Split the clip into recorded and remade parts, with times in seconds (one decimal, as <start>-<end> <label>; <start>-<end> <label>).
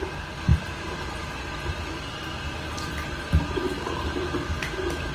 0.0-0.5 recorded; 0.5-1.4 remade; 1.4-2.7 recorded; 2.7-4.5 remade; 4.5-5.1 recorded